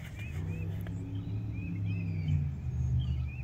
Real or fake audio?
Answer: real